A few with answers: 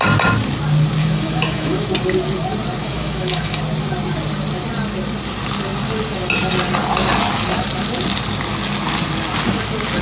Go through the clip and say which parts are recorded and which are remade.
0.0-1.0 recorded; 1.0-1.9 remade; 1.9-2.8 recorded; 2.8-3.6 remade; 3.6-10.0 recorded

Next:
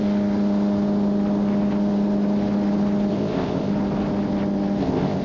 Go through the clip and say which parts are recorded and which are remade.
0.0-3.1 recorded; 3.1-3.7 remade; 3.7-4.8 recorded; 4.8-5.2 remade

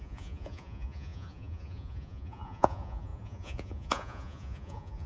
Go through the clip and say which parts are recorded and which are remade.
0.0-5.1 remade

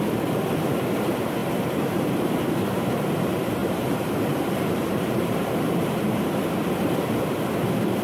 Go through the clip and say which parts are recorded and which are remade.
0.0-1.4 recorded; 1.4-2.9 remade; 2.9-3.6 recorded; 3.6-6.2 remade; 6.2-8.0 recorded

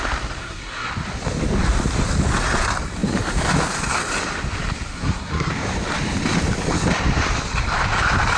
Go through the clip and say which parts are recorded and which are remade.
0.0-0.4 recorded; 0.4-0.9 remade; 0.9-4.9 recorded; 4.9-5.5 remade; 5.5-8.4 recorded

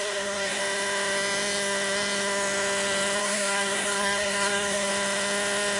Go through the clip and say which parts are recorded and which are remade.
0.0-0.6 remade; 0.6-3.2 recorded; 3.2-4.9 remade; 4.9-5.8 recorded

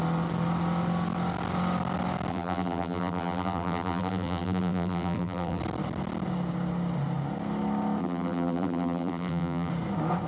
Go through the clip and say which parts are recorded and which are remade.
0.0-2.3 recorded; 2.3-5.6 remade; 5.6-8.0 recorded; 8.0-9.7 remade; 9.7-10.3 recorded